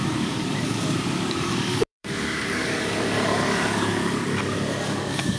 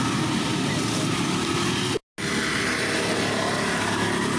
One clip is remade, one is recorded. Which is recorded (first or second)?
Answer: second